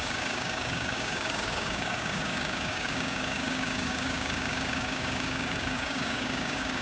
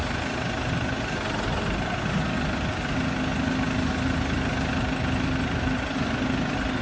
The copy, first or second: first